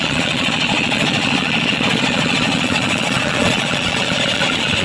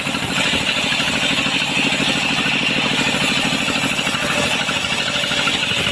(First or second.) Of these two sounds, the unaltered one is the second